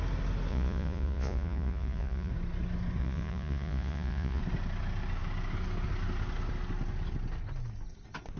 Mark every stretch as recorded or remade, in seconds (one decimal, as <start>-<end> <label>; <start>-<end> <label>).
0.0-0.5 recorded; 0.5-2.3 remade; 2.3-3.0 recorded; 3.0-4.4 remade; 4.4-8.4 recorded